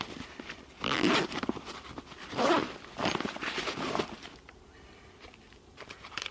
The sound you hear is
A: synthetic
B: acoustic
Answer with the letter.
B